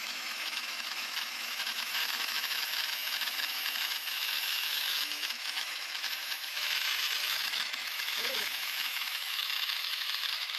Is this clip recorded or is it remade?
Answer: remade